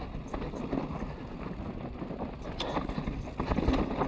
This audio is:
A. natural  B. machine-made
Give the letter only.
A